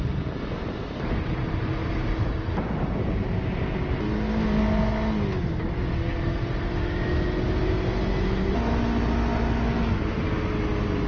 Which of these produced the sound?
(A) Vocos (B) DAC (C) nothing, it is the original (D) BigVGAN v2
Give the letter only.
C